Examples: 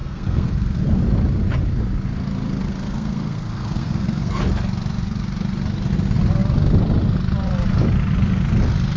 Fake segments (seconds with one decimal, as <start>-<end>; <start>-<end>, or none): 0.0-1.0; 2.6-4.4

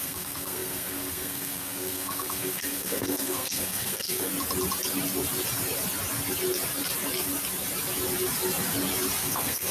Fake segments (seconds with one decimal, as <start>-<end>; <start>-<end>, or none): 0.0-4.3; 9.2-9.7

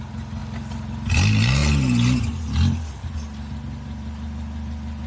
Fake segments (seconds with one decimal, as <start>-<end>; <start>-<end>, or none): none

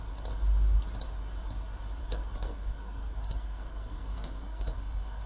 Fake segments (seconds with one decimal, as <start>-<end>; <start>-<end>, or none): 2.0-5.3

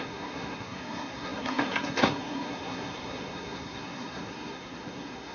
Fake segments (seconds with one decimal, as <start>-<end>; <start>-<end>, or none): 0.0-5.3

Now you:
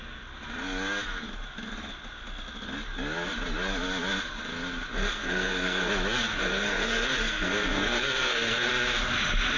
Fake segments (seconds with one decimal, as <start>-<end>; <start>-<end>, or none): 4.9-5.9; 6.4-8.7